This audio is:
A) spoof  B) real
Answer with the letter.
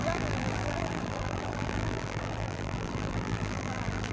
A